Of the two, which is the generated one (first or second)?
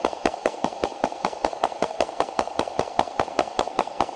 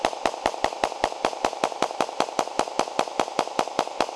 first